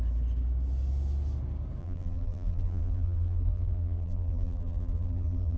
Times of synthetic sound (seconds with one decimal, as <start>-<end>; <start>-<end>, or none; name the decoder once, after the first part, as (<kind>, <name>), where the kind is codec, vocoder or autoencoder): 1.8-5.6 (vocoder, BigVGAN v2)